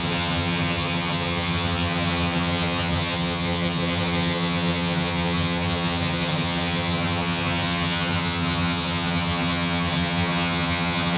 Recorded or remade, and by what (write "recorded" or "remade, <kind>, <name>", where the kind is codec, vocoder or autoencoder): remade, vocoder, HiFi-GAN